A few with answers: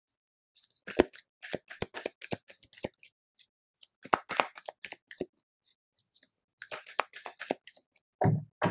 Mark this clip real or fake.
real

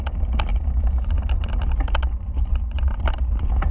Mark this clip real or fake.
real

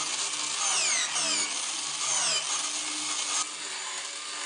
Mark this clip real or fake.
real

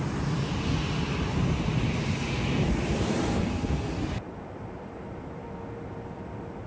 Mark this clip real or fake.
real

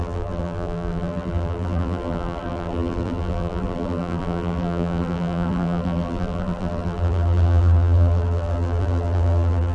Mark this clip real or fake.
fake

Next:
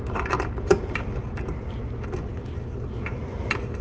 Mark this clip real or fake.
real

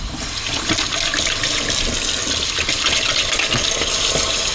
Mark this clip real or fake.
real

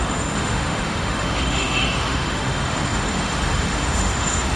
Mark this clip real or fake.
fake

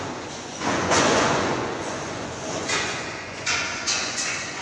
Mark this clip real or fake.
fake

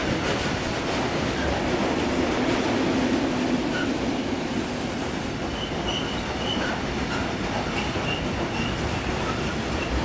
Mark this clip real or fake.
real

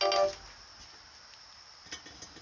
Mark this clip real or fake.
real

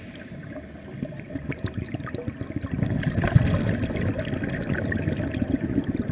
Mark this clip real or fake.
real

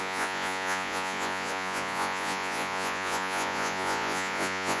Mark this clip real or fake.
fake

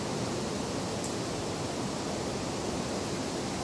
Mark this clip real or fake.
real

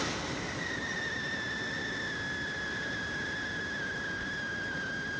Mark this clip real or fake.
real